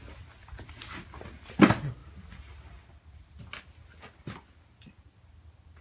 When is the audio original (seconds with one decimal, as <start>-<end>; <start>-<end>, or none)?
0.0-5.8